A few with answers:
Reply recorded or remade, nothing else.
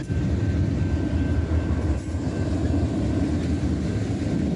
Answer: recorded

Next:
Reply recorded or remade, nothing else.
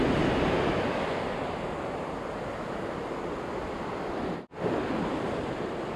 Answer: recorded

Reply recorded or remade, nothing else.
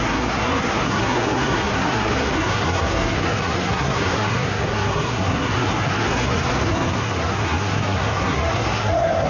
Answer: remade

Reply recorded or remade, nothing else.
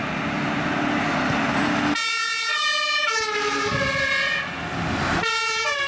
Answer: recorded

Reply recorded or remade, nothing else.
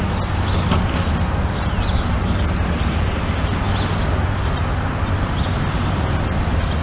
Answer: recorded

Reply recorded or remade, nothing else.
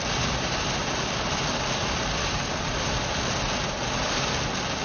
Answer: recorded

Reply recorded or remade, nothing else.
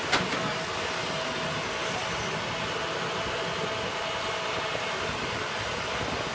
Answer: recorded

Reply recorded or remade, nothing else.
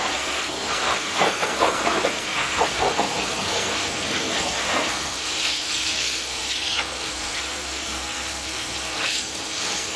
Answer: remade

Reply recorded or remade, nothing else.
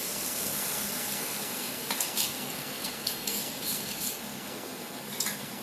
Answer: remade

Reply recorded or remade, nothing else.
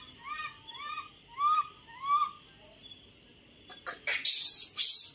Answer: recorded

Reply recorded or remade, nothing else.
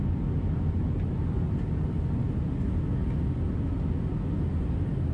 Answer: recorded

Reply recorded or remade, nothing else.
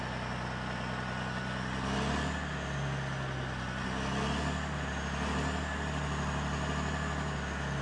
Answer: recorded